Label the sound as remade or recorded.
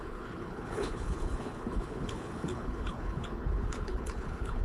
remade